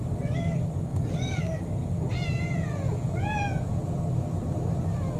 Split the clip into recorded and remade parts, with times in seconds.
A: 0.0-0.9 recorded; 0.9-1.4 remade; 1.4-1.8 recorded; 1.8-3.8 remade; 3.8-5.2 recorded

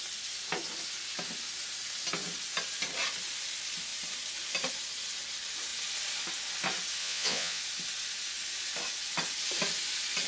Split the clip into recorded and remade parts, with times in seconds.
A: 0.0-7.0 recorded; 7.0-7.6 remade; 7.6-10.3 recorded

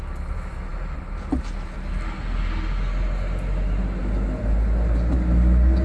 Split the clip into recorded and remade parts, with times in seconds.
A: 0.0-5.8 recorded

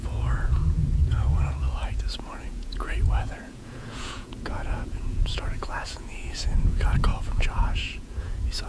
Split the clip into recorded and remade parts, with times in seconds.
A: 0.0-8.7 remade

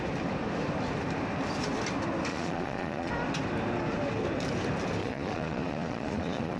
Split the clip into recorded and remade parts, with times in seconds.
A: 0.0-2.3 recorded; 2.3-3.1 remade; 3.1-5.0 recorded; 5.0-6.6 remade